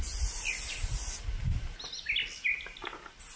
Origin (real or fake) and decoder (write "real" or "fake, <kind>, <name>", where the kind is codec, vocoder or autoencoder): real